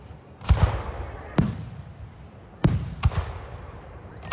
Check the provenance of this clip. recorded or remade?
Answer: recorded